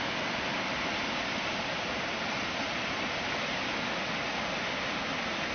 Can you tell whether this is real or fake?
real